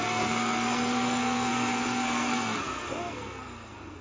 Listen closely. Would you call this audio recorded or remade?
remade